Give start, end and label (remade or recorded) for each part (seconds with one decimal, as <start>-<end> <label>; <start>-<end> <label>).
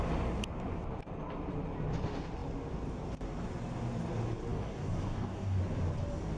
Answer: 0.0-4.5 recorded; 4.5-5.6 remade; 5.6-6.4 recorded